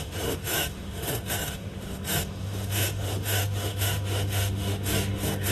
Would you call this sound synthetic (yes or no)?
yes